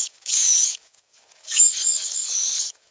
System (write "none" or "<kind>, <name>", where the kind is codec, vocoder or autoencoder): codec, DAC